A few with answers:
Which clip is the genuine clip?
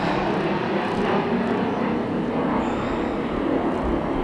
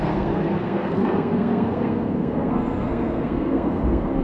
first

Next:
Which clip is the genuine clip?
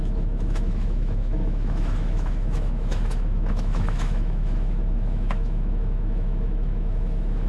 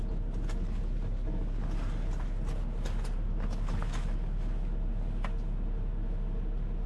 second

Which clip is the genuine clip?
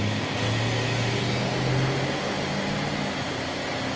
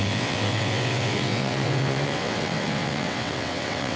first